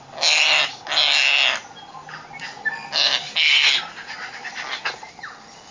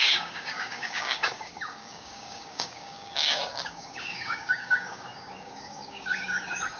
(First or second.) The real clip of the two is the first